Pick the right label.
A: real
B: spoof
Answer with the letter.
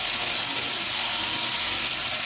A